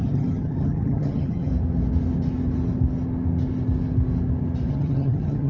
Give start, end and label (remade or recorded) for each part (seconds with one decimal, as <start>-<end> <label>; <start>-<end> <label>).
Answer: 0.0-1.5 remade; 1.5-4.7 recorded; 4.7-5.5 remade